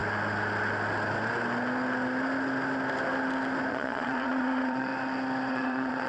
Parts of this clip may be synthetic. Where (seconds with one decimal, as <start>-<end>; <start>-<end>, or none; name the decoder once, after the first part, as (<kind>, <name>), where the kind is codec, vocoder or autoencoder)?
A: 3.7-4.9 (vocoder, Vocos); 5.5-6.1